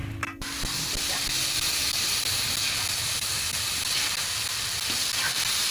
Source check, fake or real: real